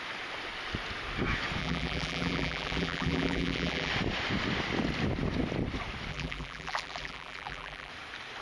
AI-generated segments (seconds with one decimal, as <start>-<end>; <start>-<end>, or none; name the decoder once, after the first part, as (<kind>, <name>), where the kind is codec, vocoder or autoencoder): 1.6-3.9 (vocoder, BigVGAN v2); 6.1-7.9